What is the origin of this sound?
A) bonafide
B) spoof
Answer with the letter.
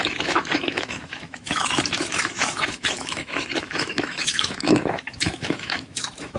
B